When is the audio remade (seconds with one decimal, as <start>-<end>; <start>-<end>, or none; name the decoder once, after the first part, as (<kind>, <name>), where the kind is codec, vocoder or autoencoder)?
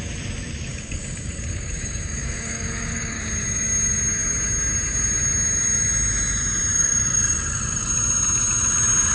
0.7-3.2 (codec, DAC); 6.8-7.9